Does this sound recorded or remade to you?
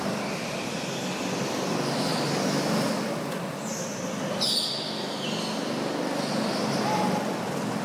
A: recorded